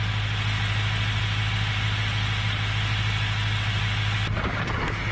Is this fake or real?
real